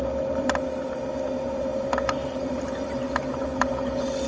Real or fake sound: fake